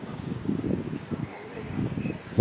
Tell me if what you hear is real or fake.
fake